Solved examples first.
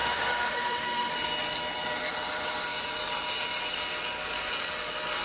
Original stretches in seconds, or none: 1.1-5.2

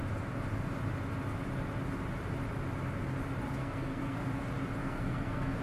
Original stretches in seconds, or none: 0.0-3.6; 4.2-4.8

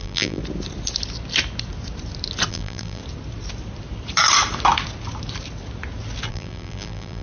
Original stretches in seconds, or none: 0.4-2.5; 3.0-6.3

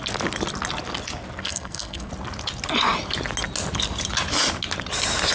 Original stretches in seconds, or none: 0.0-1.4; 2.1-5.3

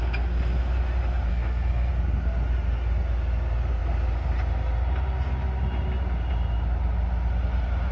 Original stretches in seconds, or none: 0.0-1.3; 1.9-7.9